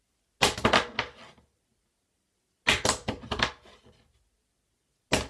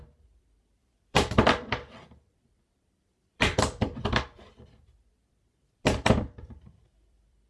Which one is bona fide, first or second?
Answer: first